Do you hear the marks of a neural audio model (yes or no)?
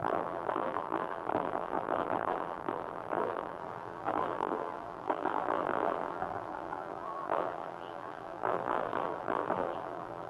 yes